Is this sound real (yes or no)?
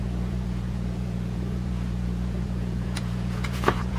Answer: no